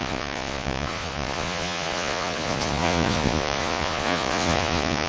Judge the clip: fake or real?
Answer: fake